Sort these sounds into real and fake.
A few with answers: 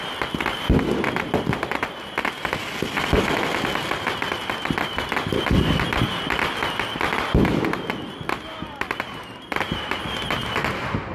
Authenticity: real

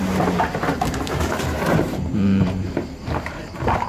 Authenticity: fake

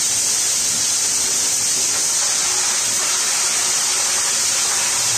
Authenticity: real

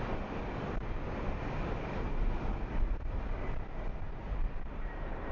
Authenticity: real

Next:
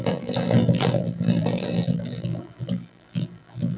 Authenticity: fake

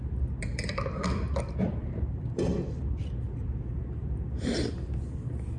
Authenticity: fake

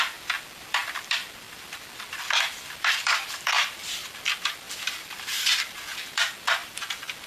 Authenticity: fake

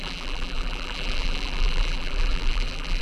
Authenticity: fake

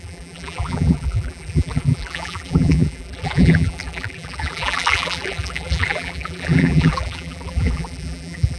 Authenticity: fake